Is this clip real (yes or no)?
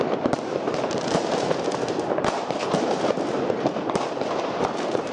no